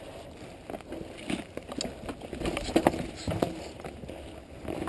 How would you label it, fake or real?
real